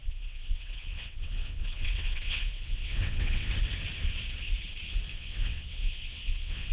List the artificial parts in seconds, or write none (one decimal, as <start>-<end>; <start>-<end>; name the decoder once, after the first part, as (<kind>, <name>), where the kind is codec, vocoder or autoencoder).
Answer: 0.0-3.5 (vocoder, WaveNeXt); 5.1-6.7